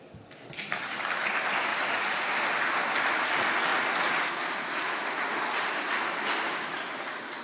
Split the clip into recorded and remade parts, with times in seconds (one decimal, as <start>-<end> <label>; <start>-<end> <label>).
0.0-1.7 recorded; 1.7-2.3 remade; 2.3-3.7 recorded; 3.7-4.4 remade; 4.4-7.4 recorded